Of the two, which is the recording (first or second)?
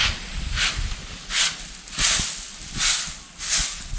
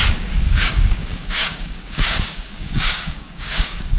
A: first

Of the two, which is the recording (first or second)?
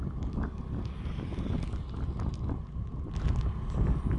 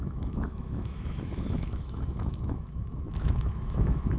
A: first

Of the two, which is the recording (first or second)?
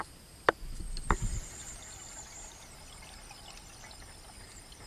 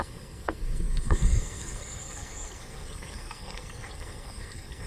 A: first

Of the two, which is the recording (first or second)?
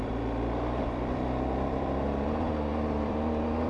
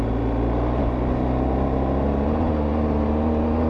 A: second